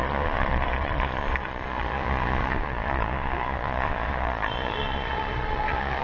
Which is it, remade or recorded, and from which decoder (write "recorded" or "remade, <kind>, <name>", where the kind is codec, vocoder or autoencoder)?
remade, vocoder, Vocos